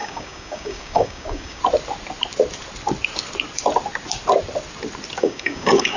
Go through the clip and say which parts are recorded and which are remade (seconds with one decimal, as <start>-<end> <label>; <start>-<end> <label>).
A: 0.0-1.6 remade; 1.6-5.2 recorded; 5.2-6.0 remade